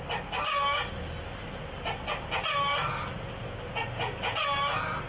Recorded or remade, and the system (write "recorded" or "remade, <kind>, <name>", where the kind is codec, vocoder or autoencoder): recorded